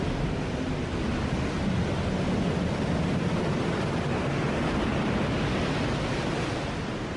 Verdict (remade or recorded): recorded